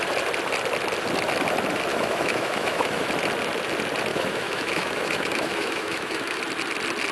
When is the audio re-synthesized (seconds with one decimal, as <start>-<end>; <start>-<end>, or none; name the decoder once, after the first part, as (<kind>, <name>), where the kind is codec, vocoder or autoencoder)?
1.9-3.1 (autoencoder, DAC-VAE); 4.1-6.4